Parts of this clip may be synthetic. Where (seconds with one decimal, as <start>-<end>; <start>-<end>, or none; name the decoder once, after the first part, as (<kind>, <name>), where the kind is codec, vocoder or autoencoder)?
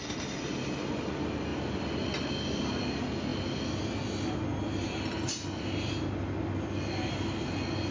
none